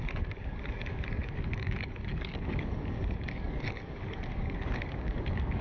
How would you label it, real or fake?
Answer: fake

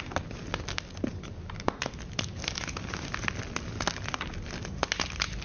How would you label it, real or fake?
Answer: real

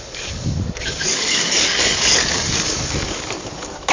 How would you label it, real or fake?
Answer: fake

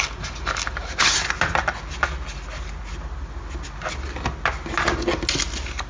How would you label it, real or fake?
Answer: real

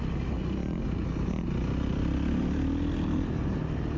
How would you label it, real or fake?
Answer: real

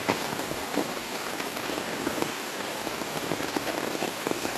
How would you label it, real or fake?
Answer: fake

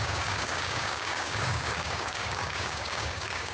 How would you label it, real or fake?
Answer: fake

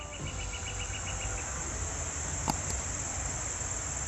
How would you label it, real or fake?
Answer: real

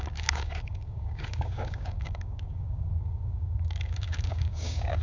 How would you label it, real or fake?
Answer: fake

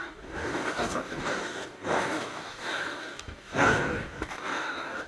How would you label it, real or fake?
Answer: fake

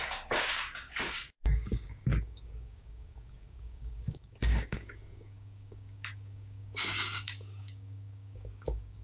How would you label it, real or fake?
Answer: fake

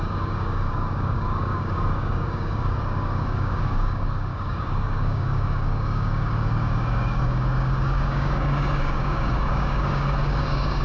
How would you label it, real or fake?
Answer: fake